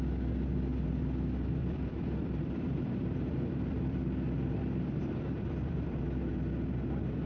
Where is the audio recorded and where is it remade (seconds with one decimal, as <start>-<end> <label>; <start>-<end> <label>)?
0.0-1.6 recorded; 1.6-6.0 remade; 6.0-7.3 recorded